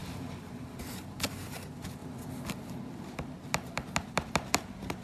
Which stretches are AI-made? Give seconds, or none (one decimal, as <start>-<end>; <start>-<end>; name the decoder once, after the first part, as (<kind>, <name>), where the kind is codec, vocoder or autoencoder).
0.0-1.5 (vocoder, BigVGAN v2)